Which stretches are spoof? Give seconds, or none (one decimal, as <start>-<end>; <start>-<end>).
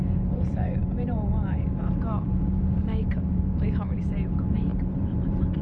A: 0.0-5.6